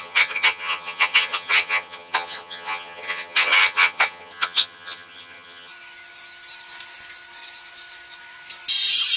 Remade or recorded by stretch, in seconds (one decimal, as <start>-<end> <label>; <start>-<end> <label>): 0.0-5.7 remade; 5.7-9.2 recorded